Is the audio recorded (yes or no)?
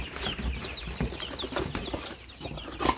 yes